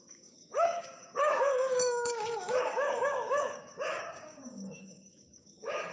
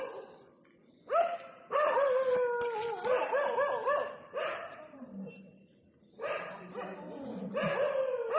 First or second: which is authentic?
second